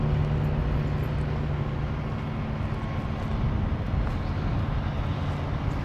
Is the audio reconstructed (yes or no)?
no